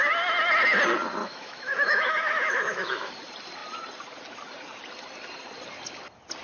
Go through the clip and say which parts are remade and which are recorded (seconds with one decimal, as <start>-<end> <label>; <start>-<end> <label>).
0.0-1.2 recorded; 1.2-3.1 remade; 3.1-6.4 recorded